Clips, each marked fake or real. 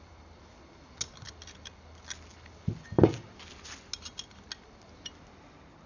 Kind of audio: real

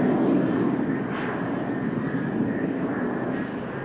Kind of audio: real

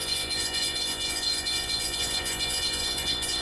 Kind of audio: fake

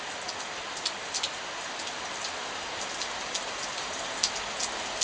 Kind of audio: real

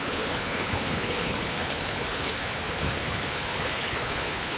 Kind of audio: fake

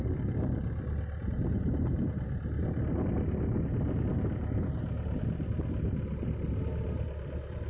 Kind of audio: real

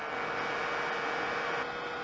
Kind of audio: real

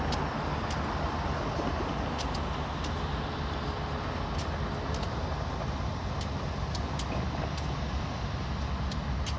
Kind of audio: real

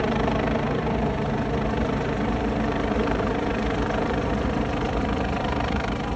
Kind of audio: fake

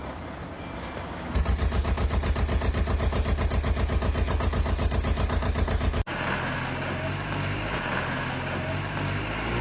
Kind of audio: real